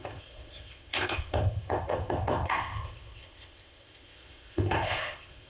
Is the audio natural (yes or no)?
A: no